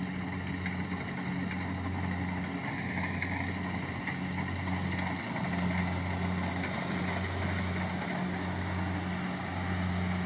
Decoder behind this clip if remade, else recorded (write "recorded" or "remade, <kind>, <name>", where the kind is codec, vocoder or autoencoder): recorded